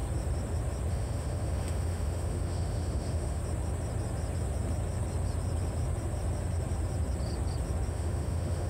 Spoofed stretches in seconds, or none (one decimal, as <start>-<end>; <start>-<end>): 0.9-3.4; 7.9-8.7